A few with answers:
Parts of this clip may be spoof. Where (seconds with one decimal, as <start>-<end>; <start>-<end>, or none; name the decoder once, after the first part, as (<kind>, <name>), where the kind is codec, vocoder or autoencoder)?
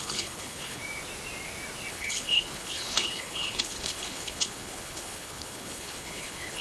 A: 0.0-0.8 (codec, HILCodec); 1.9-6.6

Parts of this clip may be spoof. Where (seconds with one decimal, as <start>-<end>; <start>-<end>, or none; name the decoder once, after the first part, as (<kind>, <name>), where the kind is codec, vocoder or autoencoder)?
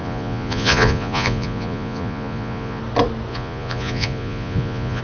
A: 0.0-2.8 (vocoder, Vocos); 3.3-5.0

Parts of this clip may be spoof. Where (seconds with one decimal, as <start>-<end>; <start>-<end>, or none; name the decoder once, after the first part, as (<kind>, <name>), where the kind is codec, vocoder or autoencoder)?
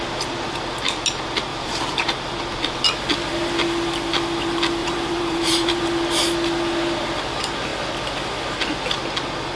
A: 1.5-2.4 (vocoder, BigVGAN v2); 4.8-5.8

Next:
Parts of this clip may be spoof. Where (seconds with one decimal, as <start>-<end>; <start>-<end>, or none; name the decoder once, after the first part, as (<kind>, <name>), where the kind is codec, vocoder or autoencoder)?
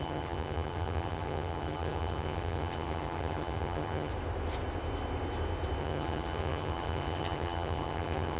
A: 0.0-4.1 (vocoder, HiFi-GAN); 5.8-8.4